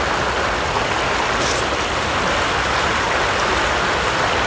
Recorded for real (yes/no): yes